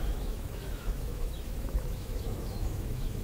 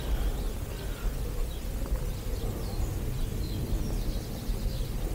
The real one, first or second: second